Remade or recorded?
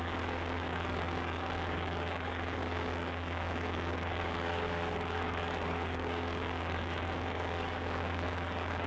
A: remade